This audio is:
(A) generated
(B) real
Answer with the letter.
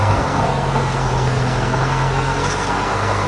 A